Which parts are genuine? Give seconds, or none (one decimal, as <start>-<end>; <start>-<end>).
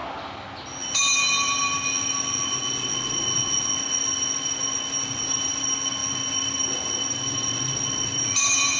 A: 0.0-8.8